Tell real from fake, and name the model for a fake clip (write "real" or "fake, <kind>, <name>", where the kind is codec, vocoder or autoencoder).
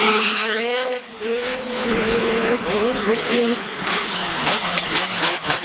fake, codec, HILCodec